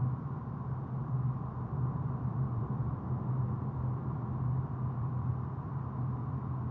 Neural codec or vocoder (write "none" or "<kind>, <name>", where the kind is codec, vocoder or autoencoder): vocoder, BigVGAN v2